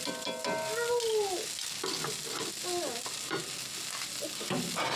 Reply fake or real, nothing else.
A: real